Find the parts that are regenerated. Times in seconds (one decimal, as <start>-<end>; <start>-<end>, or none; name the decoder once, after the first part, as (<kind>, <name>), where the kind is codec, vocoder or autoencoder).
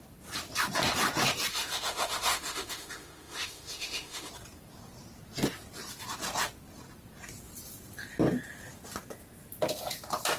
1.5-4.3 (autoencoder, DAC-VAE)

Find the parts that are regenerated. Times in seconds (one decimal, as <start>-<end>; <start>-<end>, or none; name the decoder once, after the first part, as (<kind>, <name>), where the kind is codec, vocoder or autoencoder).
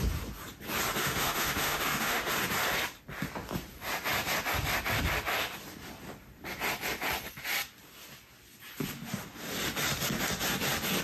1.0-2.3 (autoencoder, DAC-VAE)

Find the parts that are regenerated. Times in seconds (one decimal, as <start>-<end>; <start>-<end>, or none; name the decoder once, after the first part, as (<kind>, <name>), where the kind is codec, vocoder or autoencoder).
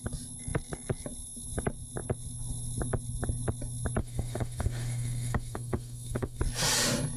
4.0-6.4 (autoencoder, DAC-VAE)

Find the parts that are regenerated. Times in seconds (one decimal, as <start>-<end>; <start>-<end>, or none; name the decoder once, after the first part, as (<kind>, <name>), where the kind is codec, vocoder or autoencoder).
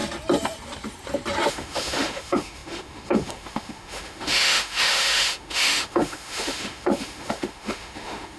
1.5-8.4 (autoencoder, DAC-VAE)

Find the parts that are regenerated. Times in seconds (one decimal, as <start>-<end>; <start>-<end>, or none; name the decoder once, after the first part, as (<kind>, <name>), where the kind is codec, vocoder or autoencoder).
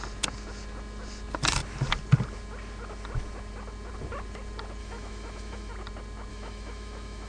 4.8-5.7 (autoencoder, DAC-VAE); 6.3-7.3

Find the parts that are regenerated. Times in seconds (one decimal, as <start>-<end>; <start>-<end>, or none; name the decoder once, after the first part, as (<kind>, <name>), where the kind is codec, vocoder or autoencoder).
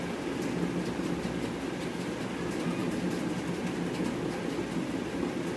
none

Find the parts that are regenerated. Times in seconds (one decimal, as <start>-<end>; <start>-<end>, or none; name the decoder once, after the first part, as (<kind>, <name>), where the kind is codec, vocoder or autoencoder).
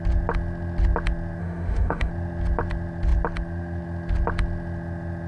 1.4-2.1 (autoencoder, DAC-VAE)